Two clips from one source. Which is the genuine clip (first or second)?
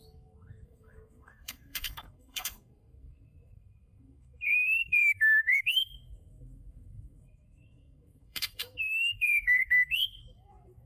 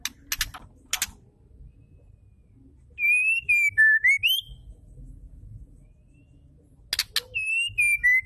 second